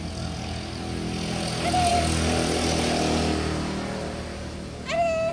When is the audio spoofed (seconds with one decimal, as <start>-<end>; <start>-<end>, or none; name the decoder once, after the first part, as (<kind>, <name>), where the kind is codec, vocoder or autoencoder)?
none